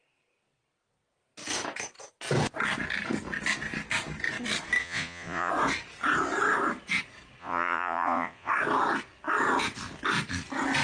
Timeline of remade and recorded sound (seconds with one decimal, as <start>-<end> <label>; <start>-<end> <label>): 0.0-4.8 recorded; 4.8-5.5 remade; 5.5-7.4 recorded; 7.4-8.5 remade; 8.5-10.8 recorded